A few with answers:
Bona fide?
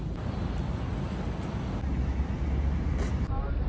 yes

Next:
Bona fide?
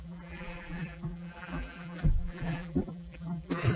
no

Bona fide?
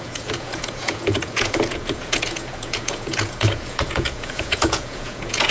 no